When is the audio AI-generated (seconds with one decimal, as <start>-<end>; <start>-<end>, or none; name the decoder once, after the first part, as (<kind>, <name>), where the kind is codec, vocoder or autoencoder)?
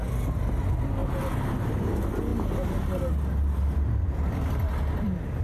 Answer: none